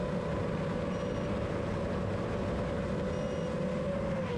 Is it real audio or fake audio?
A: real